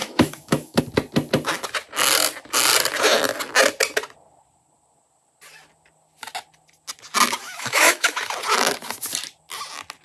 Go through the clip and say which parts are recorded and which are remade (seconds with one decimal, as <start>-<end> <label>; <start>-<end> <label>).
0.0-0.8 remade; 0.8-7.4 recorded; 7.4-8.1 remade; 8.1-10.0 recorded

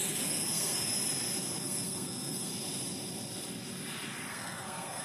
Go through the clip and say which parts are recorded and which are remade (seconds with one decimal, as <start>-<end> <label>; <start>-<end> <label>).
0.0-0.9 remade; 0.9-1.6 recorded; 1.6-2.5 remade; 2.5-4.3 recorded; 4.3-5.0 remade

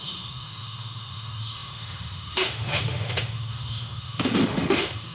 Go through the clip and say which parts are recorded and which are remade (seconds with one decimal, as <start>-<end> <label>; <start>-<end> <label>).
0.0-5.1 remade

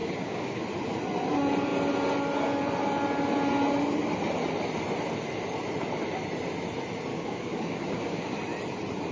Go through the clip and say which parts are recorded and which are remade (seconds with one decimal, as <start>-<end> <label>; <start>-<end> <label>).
0.0-0.6 remade; 0.6-7.1 recorded; 7.1-8.3 remade; 8.3-9.1 recorded

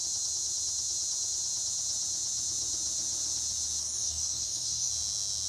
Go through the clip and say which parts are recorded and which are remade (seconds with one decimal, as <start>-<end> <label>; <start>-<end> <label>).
0.0-3.8 recorded; 3.8-4.9 remade; 4.9-5.5 recorded

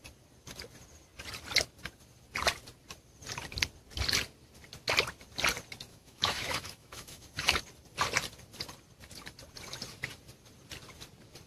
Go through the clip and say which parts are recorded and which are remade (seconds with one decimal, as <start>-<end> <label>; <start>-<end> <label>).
0.0-5.9 recorded; 5.9-7.6 remade; 7.6-11.5 recorded